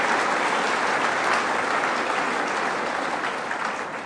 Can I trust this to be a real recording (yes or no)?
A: yes